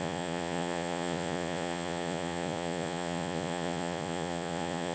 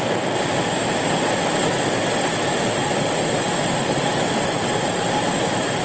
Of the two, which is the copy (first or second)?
first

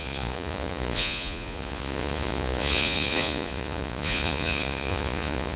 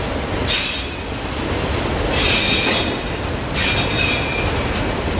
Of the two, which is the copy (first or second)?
first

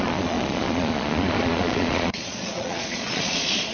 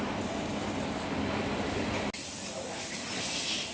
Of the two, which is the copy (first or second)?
first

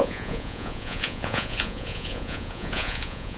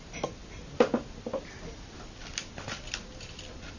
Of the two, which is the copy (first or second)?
first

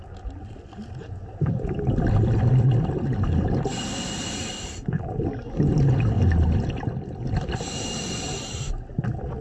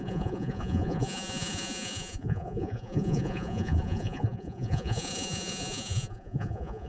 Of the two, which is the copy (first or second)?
second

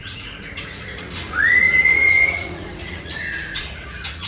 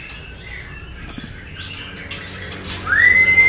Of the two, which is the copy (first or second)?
first